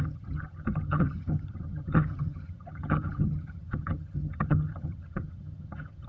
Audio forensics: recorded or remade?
remade